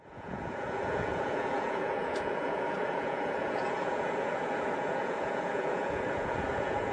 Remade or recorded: remade